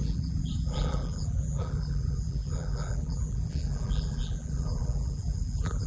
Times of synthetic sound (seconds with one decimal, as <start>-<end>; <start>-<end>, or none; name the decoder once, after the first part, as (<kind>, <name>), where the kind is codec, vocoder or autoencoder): 0.0-5.9 (vocoder, BigVGAN v2)